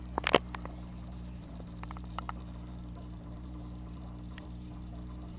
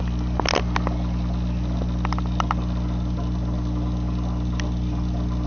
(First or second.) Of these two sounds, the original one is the second